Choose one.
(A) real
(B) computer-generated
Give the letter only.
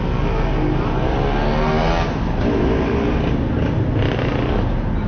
A